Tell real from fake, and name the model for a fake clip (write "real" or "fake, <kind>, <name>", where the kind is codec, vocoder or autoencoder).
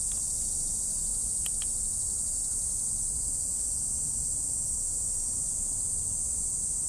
real